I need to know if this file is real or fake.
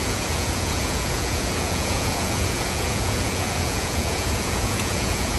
fake